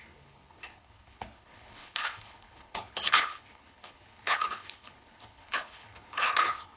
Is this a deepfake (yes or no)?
yes